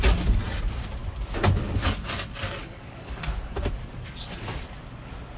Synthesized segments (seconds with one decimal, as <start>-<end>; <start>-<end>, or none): 2.6-3.3